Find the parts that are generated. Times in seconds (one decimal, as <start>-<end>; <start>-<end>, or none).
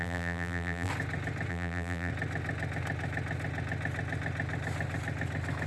0.0-0.9; 1.5-2.1